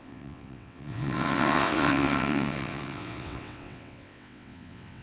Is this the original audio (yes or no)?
no